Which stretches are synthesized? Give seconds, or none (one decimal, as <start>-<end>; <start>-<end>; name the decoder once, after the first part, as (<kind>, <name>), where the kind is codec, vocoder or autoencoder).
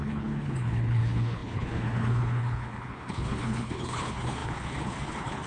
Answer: 0.0-5.5 (codec, HILCodec)